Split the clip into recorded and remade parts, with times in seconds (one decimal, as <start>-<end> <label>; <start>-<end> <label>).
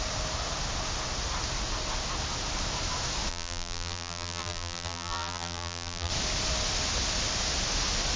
0.0-3.3 recorded; 3.3-6.1 remade; 6.1-8.2 recorded